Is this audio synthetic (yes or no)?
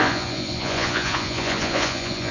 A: yes